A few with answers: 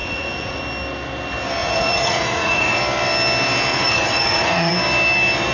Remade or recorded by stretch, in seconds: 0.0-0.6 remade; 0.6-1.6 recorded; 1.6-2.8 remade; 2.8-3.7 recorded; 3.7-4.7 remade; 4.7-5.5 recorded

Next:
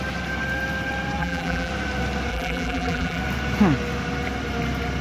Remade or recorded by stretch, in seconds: 0.0-1.2 recorded; 1.2-1.7 remade; 1.7-2.3 recorded; 2.3-3.2 remade; 3.2-5.0 recorded

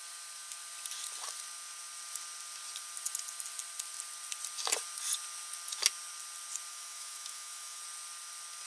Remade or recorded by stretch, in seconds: 0.0-6.7 recorded; 6.7-7.8 remade; 7.8-8.7 recorded

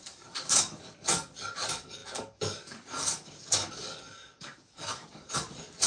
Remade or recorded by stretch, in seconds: 0.0-5.9 remade

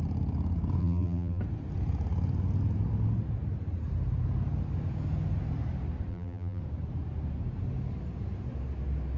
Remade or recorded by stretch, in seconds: 0.0-0.8 recorded; 0.8-1.4 remade; 1.4-6.1 recorded; 6.1-6.6 remade; 6.6-9.2 recorded